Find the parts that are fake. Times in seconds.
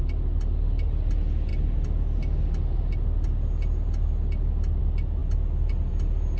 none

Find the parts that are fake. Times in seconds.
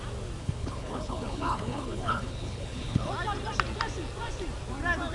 0.4-3.1 (codec, HILCodec)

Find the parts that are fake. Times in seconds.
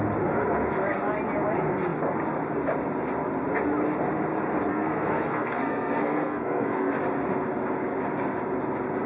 4.7-6.9 (codec, SNAC)